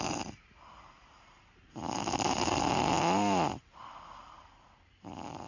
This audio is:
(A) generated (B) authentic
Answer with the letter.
B